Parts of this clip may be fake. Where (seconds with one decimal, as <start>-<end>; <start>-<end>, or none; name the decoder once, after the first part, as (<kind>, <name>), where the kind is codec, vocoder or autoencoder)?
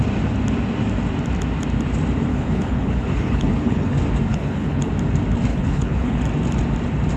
2.3-3.9 (codec, HILCodec); 4.3-4.9; 5.5-6.2